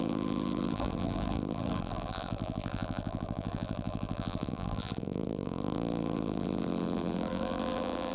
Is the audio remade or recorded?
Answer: remade